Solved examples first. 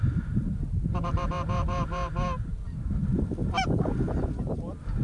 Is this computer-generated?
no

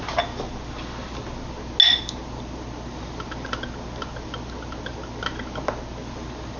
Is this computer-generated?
no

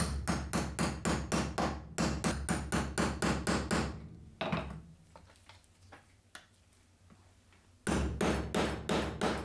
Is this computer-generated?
no